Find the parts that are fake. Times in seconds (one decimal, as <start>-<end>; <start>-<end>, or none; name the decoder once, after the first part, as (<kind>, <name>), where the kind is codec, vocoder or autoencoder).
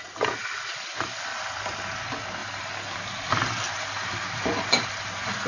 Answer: 0.0-1.3 (vocoder, BigVGAN v2); 2.0-5.5